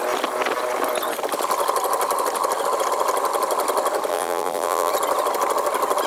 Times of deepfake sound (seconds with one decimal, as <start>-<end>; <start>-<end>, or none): 4.1-4.9